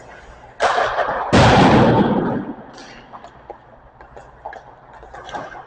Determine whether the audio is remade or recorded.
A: recorded